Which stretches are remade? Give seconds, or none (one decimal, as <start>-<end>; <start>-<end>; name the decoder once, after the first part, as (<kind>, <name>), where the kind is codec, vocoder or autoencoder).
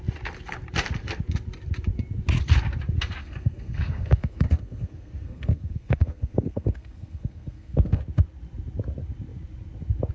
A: 3.2-8.0 (codec, SNAC)